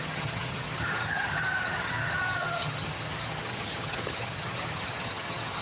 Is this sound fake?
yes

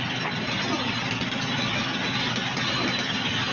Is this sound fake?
no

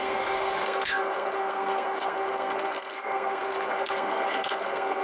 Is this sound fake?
yes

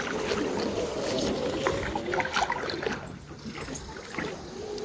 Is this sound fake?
no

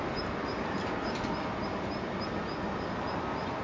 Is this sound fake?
no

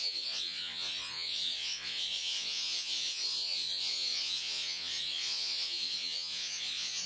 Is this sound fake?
yes